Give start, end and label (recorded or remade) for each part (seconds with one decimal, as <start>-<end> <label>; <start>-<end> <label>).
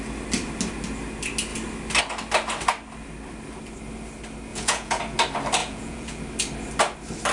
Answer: 0.0-4.5 recorded; 4.5-5.0 remade; 5.0-5.6 recorded; 5.6-6.2 remade; 6.2-7.3 recorded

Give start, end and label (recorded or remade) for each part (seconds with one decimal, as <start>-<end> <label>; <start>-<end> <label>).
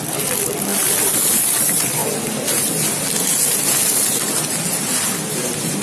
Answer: 0.0-0.7 remade; 0.7-1.6 recorded; 1.6-2.0 remade; 2.0-5.3 recorded; 5.3-5.8 remade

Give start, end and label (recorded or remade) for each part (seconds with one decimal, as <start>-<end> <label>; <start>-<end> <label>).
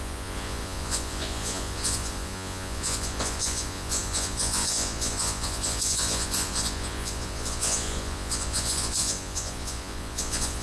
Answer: 0.0-10.6 remade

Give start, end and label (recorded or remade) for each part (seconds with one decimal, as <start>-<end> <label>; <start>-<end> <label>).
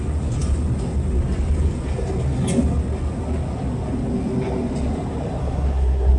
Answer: 0.0-5.4 recorded; 5.4-6.2 remade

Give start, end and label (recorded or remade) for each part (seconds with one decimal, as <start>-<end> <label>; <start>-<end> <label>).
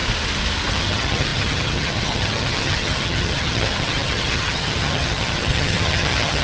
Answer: 0.0-0.7 recorded; 0.7-6.4 remade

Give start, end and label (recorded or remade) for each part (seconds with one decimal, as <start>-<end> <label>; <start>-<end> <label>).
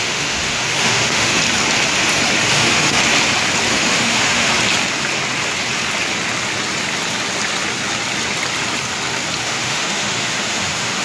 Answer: 0.0-1.4 remade; 1.4-2.5 recorded; 2.5-3.0 remade; 3.0-3.7 recorded; 3.7-4.5 remade; 4.5-9.4 recorded; 9.4-11.0 remade